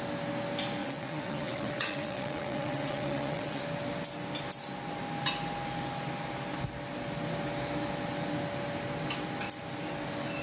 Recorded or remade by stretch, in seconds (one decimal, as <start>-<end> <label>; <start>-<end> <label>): 0.0-0.8 recorded; 0.8-3.6 remade; 3.6-10.4 recorded